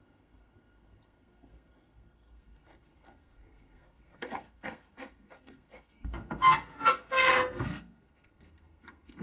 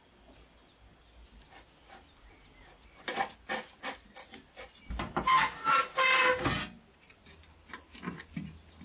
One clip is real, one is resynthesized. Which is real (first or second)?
second